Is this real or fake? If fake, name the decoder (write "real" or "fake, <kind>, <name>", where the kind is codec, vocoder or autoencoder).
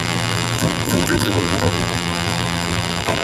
fake, vocoder, BigVGAN v2